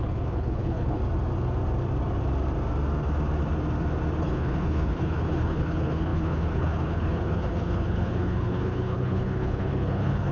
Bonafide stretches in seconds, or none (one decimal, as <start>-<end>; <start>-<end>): 1.0-4.2